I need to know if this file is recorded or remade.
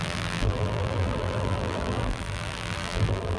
remade